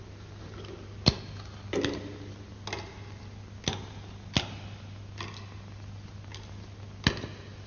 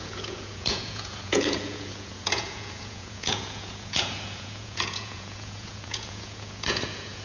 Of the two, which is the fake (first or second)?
second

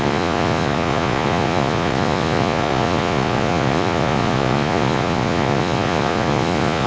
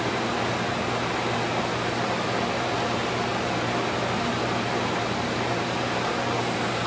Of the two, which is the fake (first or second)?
first